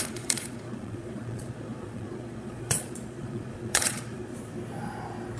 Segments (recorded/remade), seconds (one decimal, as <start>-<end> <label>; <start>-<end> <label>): 0.0-4.3 remade; 4.3-5.4 recorded

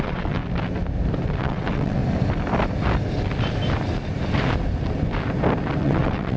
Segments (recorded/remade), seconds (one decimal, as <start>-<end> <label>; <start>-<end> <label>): 0.0-0.4 remade; 0.4-1.4 recorded; 1.4-2.0 remade; 2.0-5.8 recorded; 5.8-6.4 remade